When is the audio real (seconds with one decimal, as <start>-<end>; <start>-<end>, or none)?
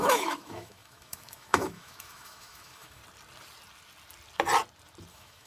3.0-5.1